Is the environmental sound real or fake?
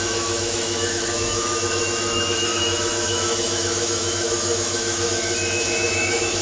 fake